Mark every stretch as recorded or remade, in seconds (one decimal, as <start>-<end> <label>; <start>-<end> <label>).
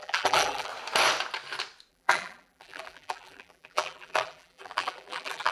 0.0-0.7 remade; 0.7-1.9 recorded; 1.9-5.5 remade